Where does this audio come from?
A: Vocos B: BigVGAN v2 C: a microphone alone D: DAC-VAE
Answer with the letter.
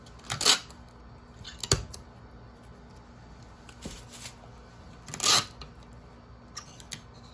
C